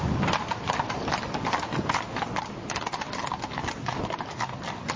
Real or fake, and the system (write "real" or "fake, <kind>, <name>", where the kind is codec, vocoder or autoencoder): real